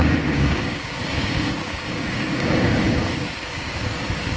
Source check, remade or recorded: remade